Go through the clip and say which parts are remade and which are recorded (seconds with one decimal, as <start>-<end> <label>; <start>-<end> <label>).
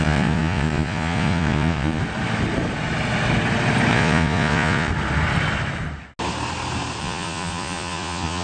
0.0-2.0 remade; 2.0-3.9 recorded; 3.9-4.9 remade; 4.9-7.0 recorded; 7.0-8.4 remade